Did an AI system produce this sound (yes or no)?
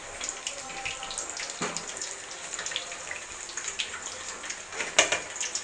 no